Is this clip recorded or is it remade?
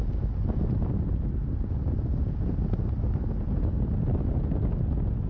recorded